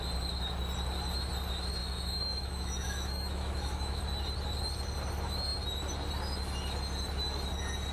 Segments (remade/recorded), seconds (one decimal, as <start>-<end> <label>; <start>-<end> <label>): 0.0-1.8 recorded; 1.8-4.0 remade; 4.0-7.9 recorded

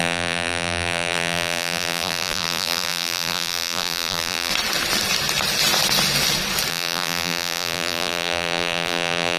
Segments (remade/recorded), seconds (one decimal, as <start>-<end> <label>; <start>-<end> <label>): 0.0-4.5 remade; 4.5-6.7 recorded; 6.7-9.4 remade

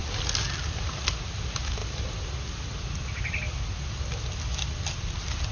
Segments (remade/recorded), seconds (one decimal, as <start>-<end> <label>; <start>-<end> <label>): 0.0-5.5 recorded

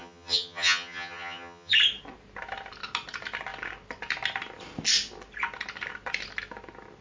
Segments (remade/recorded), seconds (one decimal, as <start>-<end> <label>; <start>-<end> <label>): 0.0-1.7 remade; 1.7-7.0 recorded